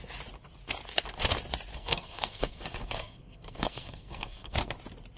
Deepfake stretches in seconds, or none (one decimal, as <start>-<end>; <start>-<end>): 1.7-4.7